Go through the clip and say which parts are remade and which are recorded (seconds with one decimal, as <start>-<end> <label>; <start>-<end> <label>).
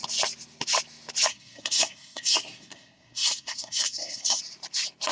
0.0-1.3 recorded; 1.3-4.4 remade; 4.4-5.1 recorded